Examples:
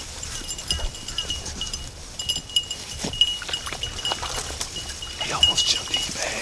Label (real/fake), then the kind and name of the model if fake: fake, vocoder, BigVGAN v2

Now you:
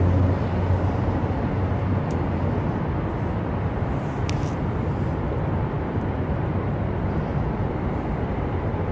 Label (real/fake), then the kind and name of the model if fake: real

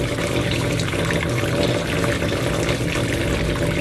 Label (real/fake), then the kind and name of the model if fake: real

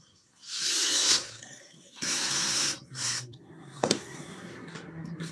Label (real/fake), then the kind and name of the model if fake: fake, codec, SNAC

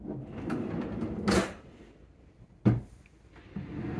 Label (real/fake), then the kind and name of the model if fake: real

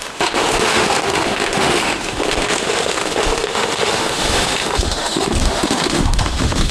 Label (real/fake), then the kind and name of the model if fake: fake, autoencoder, DAC-VAE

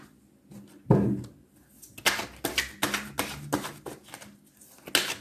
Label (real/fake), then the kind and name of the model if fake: real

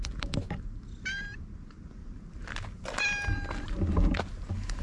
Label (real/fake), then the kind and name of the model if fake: real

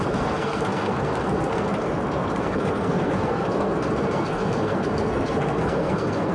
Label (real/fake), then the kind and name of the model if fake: fake, codec, SNAC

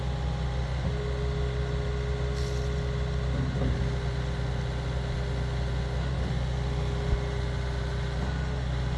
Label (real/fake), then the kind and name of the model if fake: real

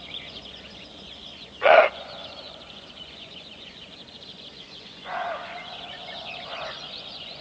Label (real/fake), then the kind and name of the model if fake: fake, vocoder, Vocos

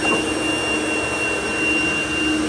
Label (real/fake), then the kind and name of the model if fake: real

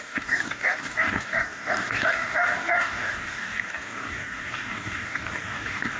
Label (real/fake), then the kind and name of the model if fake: fake, codec, DAC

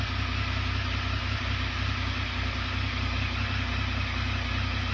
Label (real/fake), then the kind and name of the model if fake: real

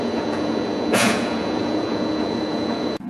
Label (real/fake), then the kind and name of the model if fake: fake, vocoder, Vocos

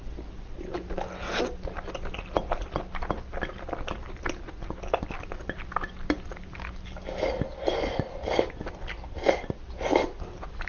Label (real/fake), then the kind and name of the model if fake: real